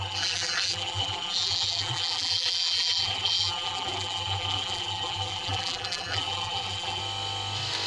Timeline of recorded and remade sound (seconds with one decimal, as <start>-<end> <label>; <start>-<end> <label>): 0.0-7.0 remade; 7.0-7.9 recorded

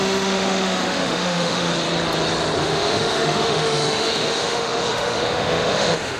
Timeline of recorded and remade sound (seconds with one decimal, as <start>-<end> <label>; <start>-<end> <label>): 0.0-1.7 remade; 1.7-2.6 recorded; 2.6-6.2 remade

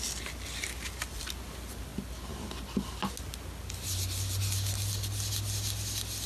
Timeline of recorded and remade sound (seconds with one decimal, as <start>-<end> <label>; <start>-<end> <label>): 0.0-6.3 recorded

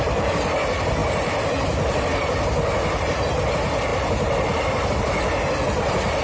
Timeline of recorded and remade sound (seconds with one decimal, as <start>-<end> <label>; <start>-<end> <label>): 0.0-6.2 recorded

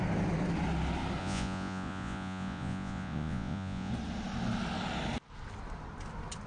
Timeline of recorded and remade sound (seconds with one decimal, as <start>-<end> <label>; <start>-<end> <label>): 0.0-1.2 recorded; 1.2-3.9 remade; 3.9-6.5 recorded